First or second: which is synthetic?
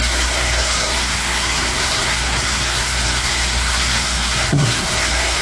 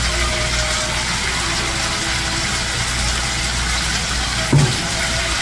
first